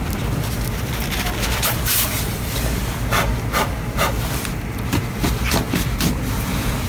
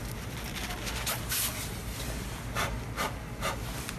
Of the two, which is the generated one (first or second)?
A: first